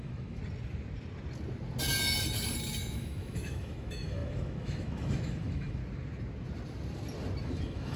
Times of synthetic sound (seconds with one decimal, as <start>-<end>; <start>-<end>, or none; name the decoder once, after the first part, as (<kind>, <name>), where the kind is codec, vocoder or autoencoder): 0.0-0.4 (autoencoder, DAC-VAE); 2.8-5.8; 7.4-8.0